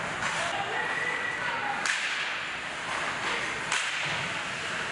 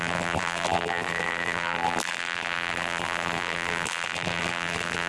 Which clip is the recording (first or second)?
first